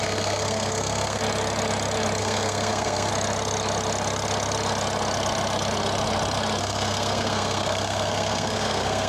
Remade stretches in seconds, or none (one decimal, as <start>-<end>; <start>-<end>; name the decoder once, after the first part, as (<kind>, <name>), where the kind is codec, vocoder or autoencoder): 0.0-1.2 (codec, SNAC); 2.2-3.1; 6.6-9.1